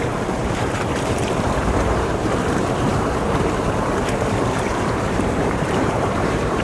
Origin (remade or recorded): remade